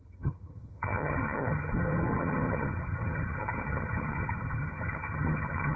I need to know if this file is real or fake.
fake